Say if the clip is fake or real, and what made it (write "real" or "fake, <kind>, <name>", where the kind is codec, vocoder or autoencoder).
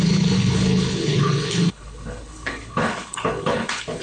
fake, codec, HILCodec